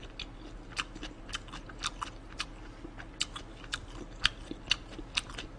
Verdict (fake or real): real